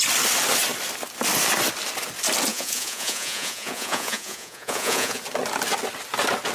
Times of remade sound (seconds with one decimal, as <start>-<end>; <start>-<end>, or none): 2.5-5.2